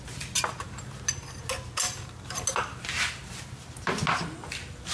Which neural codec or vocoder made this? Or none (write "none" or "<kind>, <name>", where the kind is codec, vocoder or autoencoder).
none